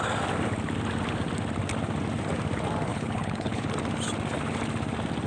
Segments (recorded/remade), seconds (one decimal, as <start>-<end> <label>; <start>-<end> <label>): 0.0-2.9 recorded; 2.9-3.7 remade; 3.7-5.3 recorded